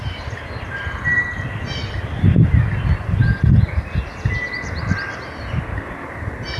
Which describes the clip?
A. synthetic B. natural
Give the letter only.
B